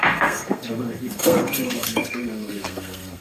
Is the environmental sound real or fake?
fake